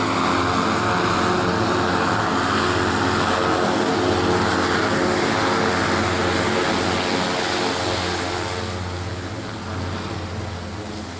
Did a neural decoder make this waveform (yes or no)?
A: no